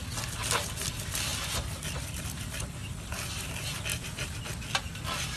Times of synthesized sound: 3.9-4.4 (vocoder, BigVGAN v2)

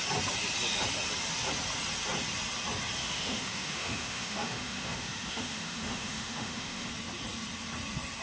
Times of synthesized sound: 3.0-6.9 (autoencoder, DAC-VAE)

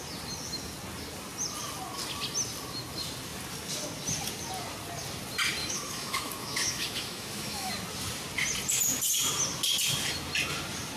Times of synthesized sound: 5.6-7.7 (autoencoder, DAC-VAE)